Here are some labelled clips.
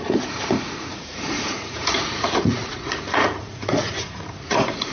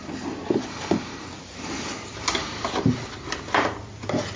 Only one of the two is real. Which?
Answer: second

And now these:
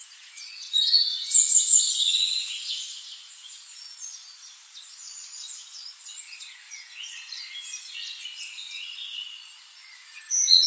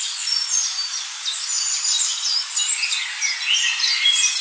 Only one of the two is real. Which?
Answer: second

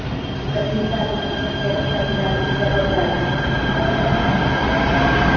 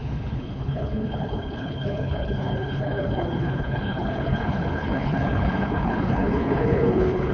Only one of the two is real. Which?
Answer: first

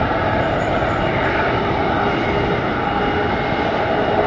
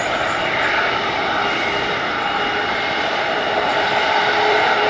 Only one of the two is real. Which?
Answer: first